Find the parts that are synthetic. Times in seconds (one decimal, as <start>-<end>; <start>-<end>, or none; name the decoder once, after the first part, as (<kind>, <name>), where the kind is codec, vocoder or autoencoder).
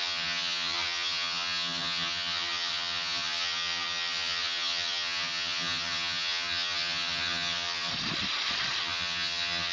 0.0-7.9 (vocoder, HiFi-GAN); 8.8-9.7